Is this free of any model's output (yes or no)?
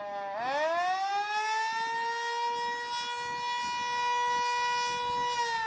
yes